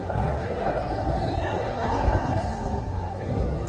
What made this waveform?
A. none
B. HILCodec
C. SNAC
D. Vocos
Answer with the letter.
C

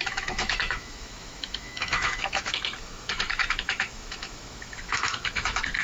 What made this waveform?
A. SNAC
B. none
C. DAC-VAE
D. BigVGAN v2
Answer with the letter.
C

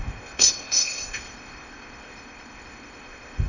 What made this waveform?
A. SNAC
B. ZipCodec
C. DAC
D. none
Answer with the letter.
B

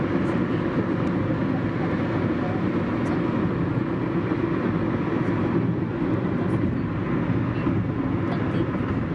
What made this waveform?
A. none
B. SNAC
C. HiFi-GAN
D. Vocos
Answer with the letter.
A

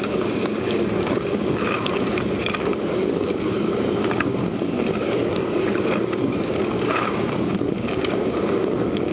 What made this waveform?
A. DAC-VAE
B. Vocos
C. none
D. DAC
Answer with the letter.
D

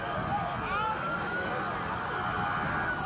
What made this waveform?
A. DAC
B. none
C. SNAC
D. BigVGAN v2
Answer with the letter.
B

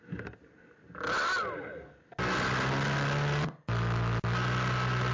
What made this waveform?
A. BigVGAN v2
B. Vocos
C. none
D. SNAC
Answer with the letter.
C